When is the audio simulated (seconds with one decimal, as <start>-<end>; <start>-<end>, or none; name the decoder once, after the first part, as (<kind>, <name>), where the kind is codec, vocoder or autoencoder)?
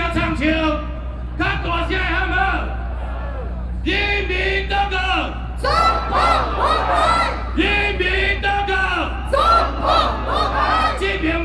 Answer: 8.0-10.1 (vocoder, BigVGAN v2)